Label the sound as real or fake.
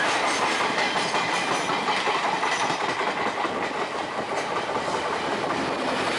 real